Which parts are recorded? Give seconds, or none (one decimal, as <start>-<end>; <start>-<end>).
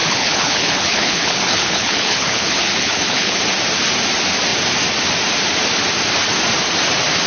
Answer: 3.4-7.3